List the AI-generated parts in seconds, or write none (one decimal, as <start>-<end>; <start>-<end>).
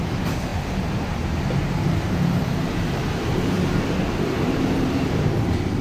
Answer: 0.0-5.8